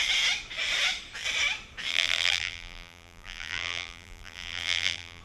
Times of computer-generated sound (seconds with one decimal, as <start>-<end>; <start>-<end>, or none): 1.9-5.2